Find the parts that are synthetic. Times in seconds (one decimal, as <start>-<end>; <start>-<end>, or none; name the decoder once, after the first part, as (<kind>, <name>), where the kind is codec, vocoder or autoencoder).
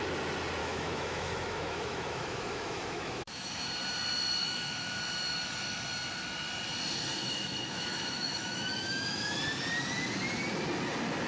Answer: 0.6-3.7 (autoencoder, DAC-VAE); 4.4-5.0; 7.2-9.4